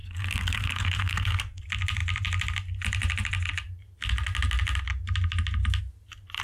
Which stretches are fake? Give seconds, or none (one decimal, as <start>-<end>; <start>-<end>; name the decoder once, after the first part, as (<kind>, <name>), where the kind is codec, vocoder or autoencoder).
0.0-1.6 (codec, SNAC)